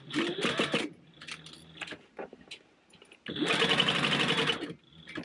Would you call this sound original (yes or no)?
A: yes